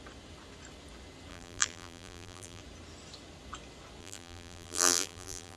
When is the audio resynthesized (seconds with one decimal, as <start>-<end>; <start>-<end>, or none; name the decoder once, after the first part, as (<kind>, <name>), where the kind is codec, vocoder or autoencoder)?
1.3-2.6 (vocoder, BigVGAN v2); 4.0-5.6